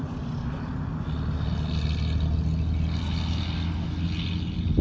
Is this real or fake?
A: real